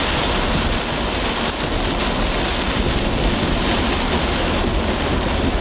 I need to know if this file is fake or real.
real